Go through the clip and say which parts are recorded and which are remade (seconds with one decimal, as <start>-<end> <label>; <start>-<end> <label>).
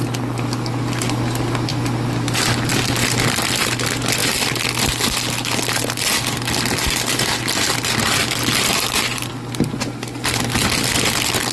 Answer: 0.0-11.5 recorded